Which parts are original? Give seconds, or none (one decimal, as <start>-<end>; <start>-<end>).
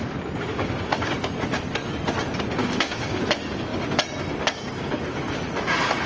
0.0-0.5; 1.1-2.6; 3.2-6.1